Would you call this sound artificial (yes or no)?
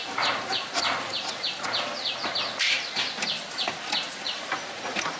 no